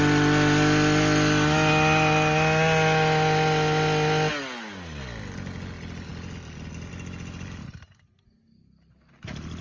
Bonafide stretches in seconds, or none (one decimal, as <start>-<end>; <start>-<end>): 0.0-9.6